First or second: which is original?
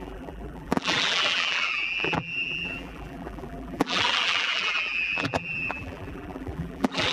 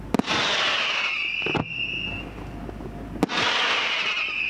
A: second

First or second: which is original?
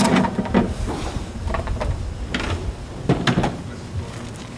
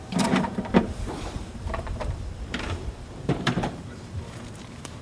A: first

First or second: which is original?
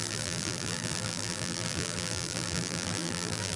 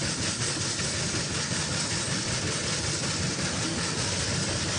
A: second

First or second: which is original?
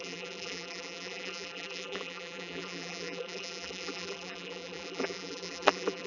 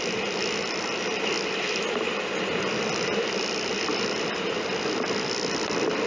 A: second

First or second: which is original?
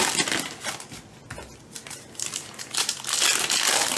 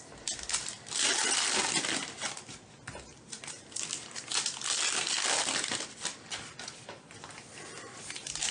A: first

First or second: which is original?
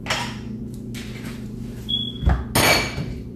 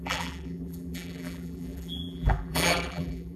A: first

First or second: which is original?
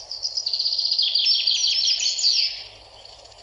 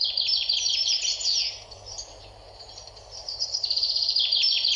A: first